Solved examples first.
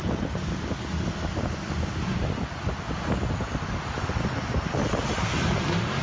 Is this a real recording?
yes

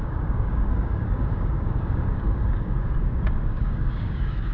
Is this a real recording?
no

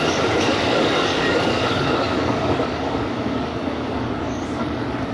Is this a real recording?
no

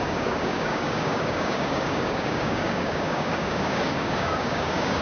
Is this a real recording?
no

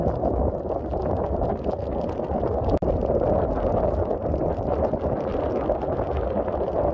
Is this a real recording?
yes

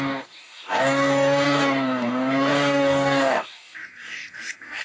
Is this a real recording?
no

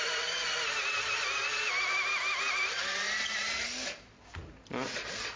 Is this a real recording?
yes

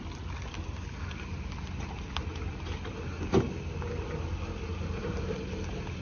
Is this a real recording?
yes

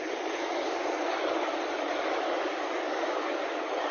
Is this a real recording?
no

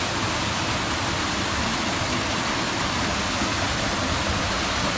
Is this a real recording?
yes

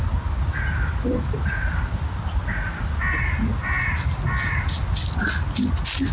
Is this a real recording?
yes